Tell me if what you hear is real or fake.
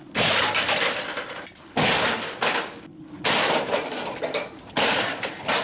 real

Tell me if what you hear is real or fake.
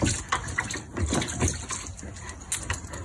real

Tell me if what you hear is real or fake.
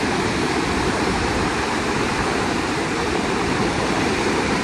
fake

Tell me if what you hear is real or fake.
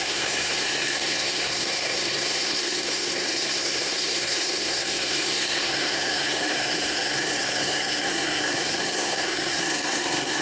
fake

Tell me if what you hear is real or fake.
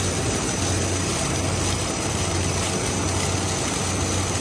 real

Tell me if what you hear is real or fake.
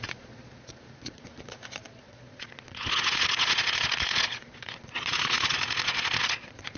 fake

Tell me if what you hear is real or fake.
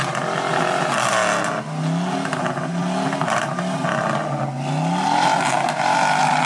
real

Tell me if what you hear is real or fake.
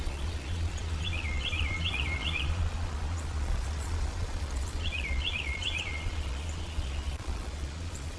fake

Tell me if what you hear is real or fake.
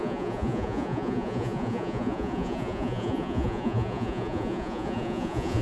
fake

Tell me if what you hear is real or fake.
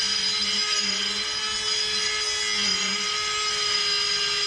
real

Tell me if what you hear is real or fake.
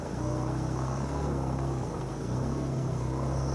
fake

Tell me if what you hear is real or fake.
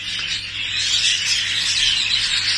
real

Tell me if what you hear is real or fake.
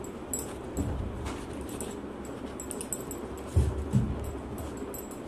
real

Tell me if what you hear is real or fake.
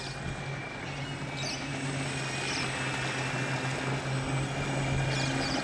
real